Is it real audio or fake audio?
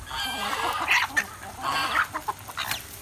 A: real